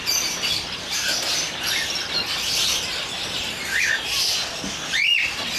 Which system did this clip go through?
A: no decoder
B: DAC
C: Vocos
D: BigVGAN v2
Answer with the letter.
D